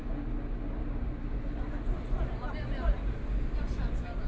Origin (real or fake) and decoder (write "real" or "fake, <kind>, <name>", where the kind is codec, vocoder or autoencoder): real